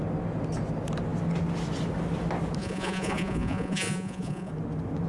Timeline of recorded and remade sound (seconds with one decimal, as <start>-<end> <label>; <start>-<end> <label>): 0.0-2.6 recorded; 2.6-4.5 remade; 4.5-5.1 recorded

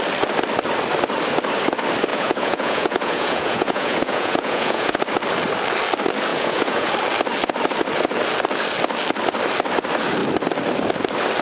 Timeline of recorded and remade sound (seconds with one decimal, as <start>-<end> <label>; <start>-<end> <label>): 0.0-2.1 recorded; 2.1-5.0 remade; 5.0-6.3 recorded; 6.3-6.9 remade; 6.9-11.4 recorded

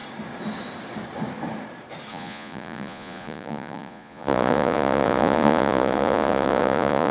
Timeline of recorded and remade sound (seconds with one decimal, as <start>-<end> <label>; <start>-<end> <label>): 0.0-2.1 recorded; 2.1-7.1 remade

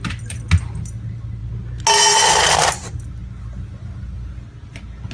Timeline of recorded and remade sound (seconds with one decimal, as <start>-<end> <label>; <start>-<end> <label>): 0.0-5.1 recorded

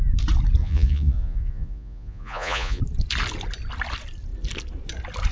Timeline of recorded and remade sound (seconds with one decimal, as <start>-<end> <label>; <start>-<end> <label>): 0.0-0.6 recorded; 0.6-2.8 remade; 2.8-5.3 recorded

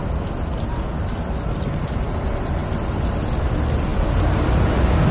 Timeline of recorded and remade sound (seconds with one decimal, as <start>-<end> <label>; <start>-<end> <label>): 0.0-5.1 recorded

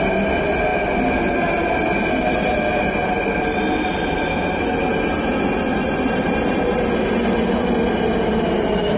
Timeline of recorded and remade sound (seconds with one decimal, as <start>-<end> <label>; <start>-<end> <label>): 0.0-9.0 recorded